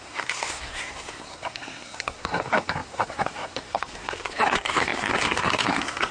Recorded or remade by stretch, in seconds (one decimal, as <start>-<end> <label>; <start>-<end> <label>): 0.0-6.1 remade